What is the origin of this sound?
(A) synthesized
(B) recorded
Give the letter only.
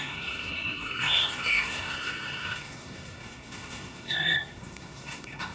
A